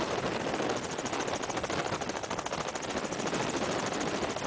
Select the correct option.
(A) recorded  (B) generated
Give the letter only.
A